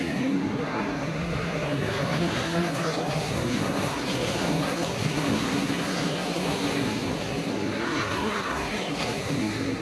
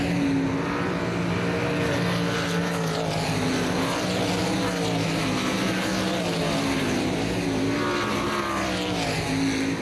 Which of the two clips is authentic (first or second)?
second